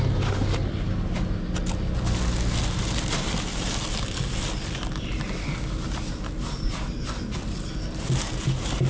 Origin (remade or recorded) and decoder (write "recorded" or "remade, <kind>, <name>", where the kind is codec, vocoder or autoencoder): recorded